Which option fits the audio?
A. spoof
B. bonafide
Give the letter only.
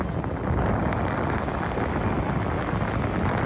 B